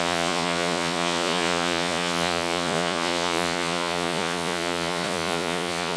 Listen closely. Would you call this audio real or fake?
fake